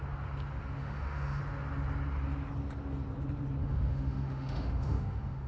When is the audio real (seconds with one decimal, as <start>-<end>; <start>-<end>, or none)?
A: 0.0-0.8; 1.4-3.6